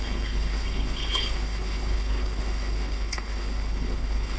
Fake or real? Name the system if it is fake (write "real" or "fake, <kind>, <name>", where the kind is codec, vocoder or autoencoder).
fake, codec, HILCodec